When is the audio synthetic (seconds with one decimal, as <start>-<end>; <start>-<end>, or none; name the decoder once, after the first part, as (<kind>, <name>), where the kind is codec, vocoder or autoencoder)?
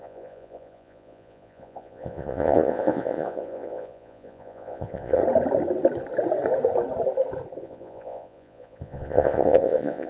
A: 0.0-5.2 (vocoder, Vocos); 7.6-10.1